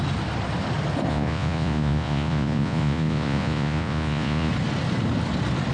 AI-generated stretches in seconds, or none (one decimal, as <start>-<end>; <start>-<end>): 1.1-4.5